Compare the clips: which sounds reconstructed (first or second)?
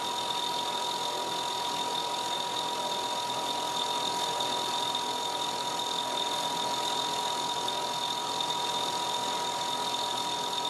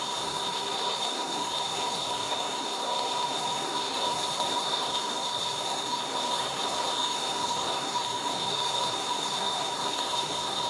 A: second